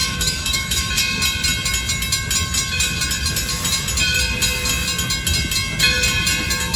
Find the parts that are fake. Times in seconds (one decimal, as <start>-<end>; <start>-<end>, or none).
0.0-0.9